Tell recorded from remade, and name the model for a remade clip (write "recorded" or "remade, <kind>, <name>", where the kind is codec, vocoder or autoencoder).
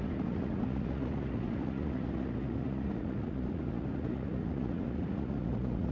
remade, vocoder, Vocos